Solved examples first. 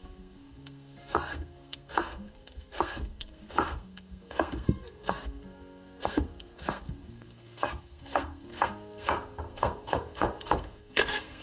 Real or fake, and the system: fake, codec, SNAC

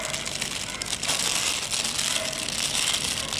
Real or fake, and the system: real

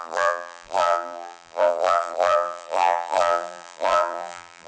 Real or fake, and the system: fake, vocoder, BigVGAN v2